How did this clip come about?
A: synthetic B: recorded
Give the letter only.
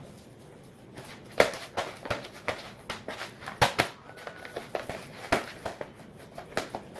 B